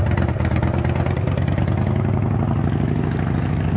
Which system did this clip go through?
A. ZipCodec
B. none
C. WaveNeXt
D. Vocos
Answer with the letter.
B